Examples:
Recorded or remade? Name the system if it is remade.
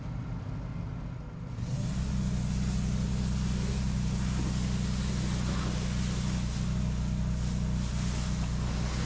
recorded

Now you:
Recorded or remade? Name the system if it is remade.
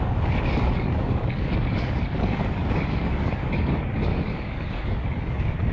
remade, codec, DAC